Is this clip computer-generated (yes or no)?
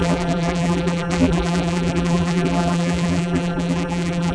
yes